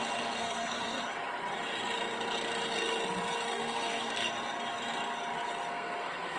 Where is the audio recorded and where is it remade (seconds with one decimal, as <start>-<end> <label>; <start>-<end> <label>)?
0.0-0.4 recorded; 0.4-1.0 remade; 1.0-3.5 recorded; 3.5-4.3 remade; 4.3-5.7 recorded; 5.7-6.4 remade